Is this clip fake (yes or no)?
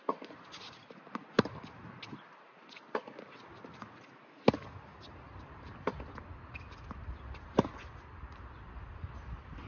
no